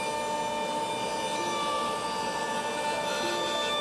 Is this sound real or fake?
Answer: real